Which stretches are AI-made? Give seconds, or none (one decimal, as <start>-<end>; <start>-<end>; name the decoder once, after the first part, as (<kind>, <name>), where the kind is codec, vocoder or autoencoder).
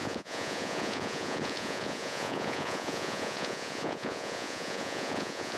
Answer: 0.0-5.6 (vocoder, Vocos)